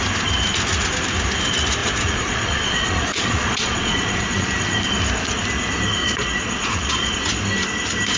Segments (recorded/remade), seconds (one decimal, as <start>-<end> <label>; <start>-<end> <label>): 0.0-1.8 recorded; 1.8-4.5 remade; 4.5-6.0 recorded; 6.0-7.1 remade; 7.1-8.2 recorded